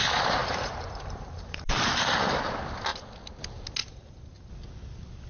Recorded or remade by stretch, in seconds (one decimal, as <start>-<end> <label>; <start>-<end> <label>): 0.0-0.4 recorded; 0.4-2.4 remade; 2.4-3.8 recorded; 3.8-4.5 remade; 4.5-5.3 recorded